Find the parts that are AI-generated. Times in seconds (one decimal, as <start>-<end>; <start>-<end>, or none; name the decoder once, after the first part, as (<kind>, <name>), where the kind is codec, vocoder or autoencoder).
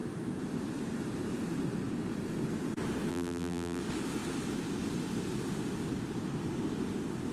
3.1-3.8 (vocoder, BigVGAN v2)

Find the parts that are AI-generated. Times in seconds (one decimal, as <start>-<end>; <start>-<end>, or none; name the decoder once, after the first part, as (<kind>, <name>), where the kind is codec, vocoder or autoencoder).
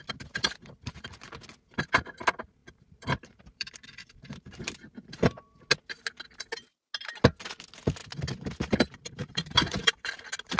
2.6-5.6 (vocoder, BigVGAN v2); 9.2-10.1